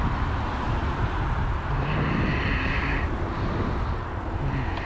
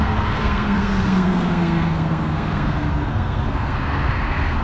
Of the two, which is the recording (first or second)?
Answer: first